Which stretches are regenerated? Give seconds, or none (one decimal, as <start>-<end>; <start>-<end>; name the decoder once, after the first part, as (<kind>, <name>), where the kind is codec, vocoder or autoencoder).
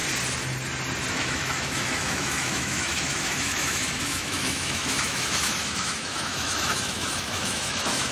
1.1-8.1 (autoencoder, DAC-VAE)